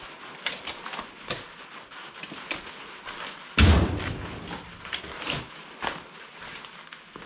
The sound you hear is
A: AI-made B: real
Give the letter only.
B